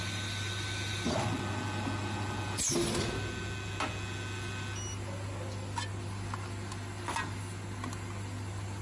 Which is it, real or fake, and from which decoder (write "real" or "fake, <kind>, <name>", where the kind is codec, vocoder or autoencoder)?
real